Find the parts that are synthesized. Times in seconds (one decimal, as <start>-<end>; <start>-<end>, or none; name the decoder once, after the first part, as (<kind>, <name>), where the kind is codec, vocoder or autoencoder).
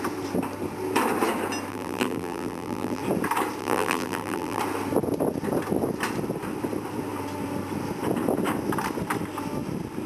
1.7-3.0 (vocoder, BigVGAN v2); 3.6-4.6